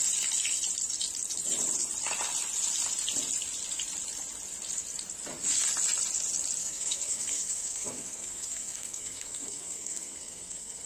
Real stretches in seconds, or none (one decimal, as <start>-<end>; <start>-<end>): 0.0-6.6